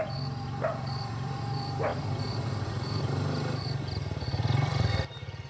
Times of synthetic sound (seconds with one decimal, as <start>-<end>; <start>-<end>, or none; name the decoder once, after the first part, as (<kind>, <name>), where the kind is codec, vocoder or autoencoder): 0.0-5.5 (vocoder, BigVGAN v2)